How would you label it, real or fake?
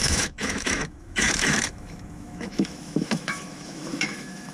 fake